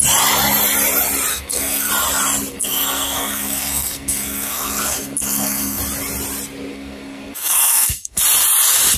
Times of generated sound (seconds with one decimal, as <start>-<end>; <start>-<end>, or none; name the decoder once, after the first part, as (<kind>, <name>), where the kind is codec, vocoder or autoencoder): 1.3-1.9 (codec, SNAC); 2.5-5.8; 6.7-8.2